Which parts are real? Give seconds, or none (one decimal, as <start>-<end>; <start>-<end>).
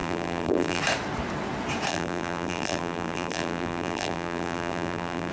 0.8-1.9